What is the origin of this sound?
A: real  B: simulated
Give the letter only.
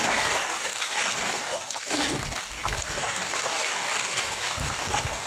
B